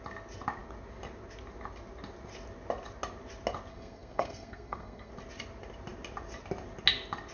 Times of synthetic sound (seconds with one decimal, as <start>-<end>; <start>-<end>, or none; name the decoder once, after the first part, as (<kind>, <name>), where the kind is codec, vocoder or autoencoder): 3.7-5.1 (codec, SNAC)